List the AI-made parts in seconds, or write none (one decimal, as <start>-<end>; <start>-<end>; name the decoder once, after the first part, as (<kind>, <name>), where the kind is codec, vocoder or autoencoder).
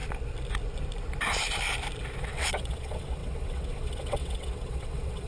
2.2-5.3 (vocoder, WaveNeXt)